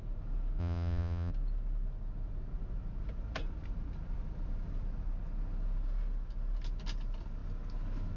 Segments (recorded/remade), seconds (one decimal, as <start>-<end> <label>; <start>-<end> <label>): 0.0-0.6 recorded; 0.6-1.3 remade; 1.3-8.2 recorded